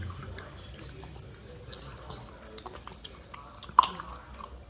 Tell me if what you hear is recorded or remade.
recorded